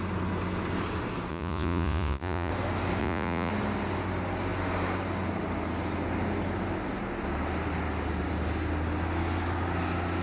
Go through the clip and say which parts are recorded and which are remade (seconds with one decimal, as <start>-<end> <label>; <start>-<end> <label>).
0.0-1.3 recorded; 1.3-2.5 remade; 2.5-3.0 recorded; 3.0-3.5 remade; 3.5-10.2 recorded